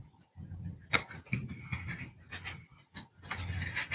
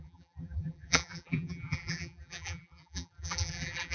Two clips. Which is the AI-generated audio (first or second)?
second